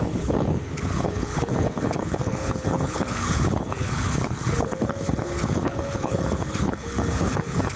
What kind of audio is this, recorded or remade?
remade